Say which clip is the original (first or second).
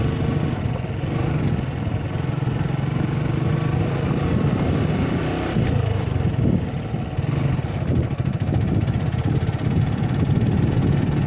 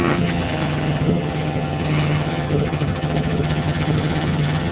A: first